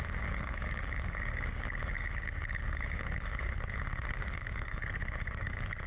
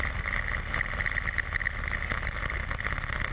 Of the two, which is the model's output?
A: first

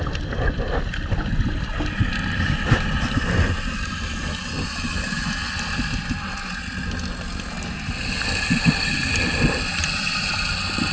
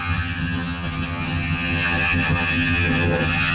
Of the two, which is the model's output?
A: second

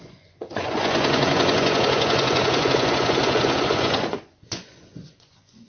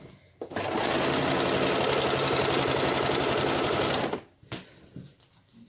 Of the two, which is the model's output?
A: first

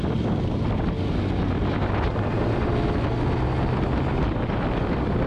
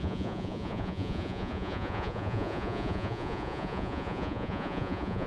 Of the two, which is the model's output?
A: second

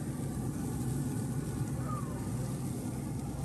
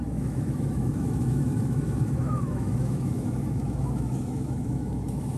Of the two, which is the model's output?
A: second